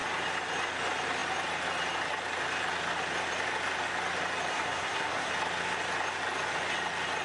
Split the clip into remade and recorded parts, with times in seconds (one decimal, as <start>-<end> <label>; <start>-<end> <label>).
0.0-4.5 recorded; 4.5-5.3 remade; 5.3-7.2 recorded

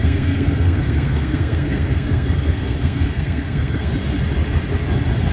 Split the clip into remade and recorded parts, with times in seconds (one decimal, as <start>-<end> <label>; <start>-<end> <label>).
0.0-3.9 remade; 3.9-5.3 recorded

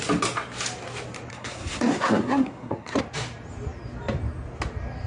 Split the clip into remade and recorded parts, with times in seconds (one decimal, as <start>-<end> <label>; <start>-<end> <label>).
0.0-1.3 recorded; 1.3-3.0 remade; 3.0-5.1 recorded

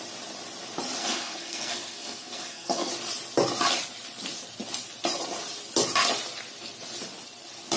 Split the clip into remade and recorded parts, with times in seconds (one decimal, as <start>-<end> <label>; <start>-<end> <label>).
0.0-1.0 recorded; 1.0-2.9 remade; 2.9-7.8 recorded

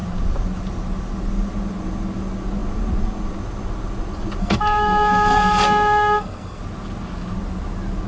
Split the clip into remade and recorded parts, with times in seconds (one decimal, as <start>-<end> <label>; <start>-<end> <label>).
0.0-4.4 recorded; 4.4-6.6 remade; 6.6-8.1 recorded

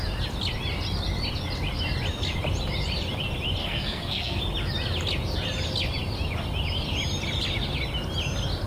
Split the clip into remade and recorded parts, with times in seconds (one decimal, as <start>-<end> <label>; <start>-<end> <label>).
0.0-3.6 recorded; 3.6-4.4 remade; 4.4-8.7 recorded